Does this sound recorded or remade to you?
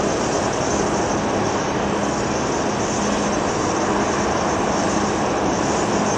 recorded